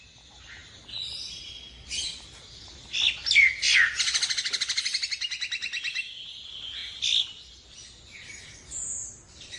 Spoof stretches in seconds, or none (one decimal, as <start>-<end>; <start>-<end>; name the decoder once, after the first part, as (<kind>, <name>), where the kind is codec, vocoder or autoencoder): none